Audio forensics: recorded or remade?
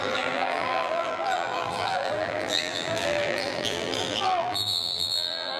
remade